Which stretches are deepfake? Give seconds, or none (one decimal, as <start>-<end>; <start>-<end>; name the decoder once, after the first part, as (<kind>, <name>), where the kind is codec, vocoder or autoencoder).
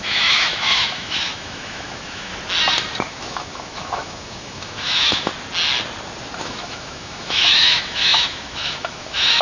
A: 0.0-2.3 (autoencoder, DAC-VAE); 3.0-5.3; 6.4-9.4